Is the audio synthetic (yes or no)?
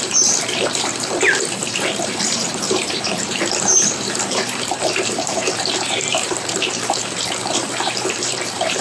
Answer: yes